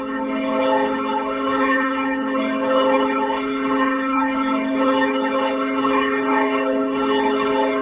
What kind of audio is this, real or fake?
fake